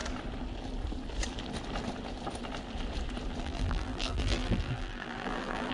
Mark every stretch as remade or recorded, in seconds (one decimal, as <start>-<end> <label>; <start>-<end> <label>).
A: 0.0-3.4 recorded; 3.4-5.7 remade